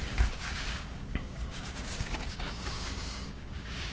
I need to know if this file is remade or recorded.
remade